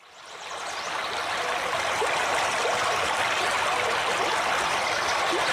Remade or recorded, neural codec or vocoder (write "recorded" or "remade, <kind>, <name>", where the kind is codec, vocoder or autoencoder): recorded